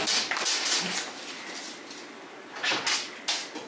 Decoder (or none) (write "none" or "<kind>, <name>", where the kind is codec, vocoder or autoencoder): none